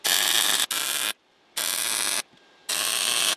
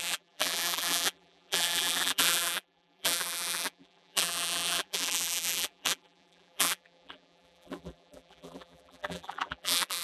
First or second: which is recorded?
first